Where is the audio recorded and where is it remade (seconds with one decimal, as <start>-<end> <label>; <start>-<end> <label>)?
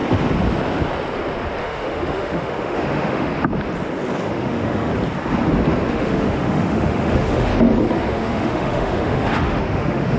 0.0-1.6 recorded; 1.6-3.3 remade; 3.3-4.3 recorded; 4.3-4.9 remade; 4.9-5.9 recorded; 5.9-7.5 remade; 7.5-8.1 recorded; 8.1-10.2 remade